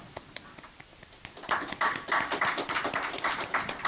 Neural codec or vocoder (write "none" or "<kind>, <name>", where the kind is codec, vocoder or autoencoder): vocoder, BigVGAN v2